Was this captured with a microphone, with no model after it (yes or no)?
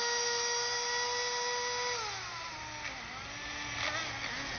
yes